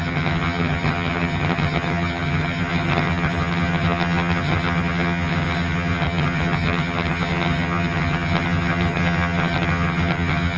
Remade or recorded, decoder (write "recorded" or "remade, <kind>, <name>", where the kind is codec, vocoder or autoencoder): remade, vocoder, HiFi-GAN